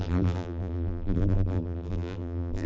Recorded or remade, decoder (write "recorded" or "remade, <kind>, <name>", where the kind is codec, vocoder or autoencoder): remade, vocoder, BigVGAN v2